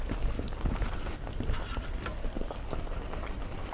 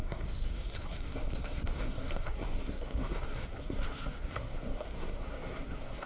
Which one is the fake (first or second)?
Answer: second